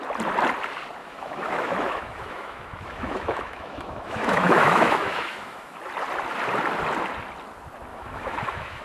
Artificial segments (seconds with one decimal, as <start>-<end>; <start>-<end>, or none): 1.0-5.8; 7.9-8.8